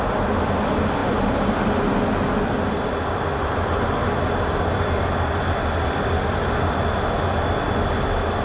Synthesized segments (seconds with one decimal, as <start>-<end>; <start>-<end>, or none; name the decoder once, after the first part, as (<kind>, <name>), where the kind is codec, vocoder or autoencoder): none